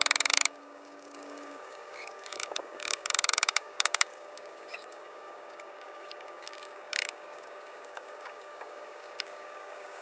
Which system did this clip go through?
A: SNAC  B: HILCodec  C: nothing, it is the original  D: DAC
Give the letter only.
D